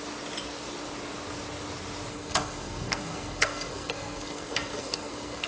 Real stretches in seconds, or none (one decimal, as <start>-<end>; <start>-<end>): 0.0-2.1